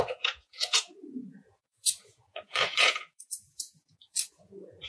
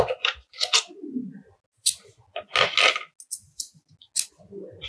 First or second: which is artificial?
first